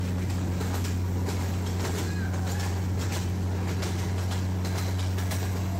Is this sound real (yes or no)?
yes